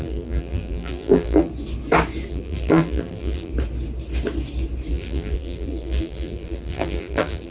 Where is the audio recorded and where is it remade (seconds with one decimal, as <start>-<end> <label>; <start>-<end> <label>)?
0.0-1.5 remade; 1.5-2.3 recorded; 2.3-3.5 remade; 3.5-4.9 recorded; 4.9-7.5 remade